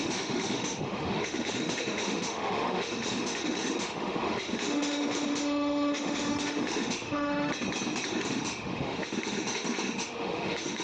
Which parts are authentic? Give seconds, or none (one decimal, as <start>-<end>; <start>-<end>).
7.5-8.1